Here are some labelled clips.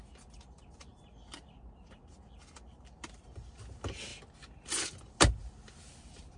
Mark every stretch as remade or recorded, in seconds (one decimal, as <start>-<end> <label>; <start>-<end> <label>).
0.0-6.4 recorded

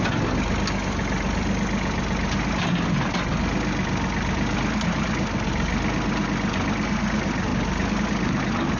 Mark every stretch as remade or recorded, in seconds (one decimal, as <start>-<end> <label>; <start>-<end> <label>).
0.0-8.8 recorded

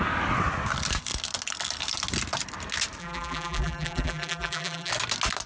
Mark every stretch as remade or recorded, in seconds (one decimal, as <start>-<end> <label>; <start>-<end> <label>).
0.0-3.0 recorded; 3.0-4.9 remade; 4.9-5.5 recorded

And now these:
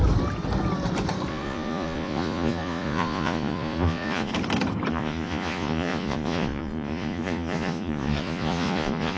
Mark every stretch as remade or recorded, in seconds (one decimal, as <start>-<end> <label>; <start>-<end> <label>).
0.0-1.3 recorded; 1.3-4.3 remade; 4.3-4.9 recorded; 4.9-9.2 remade